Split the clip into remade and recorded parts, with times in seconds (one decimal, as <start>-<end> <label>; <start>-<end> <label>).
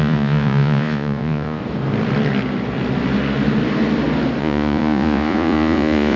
0.0-1.6 remade; 1.6-4.4 recorded; 4.4-6.2 remade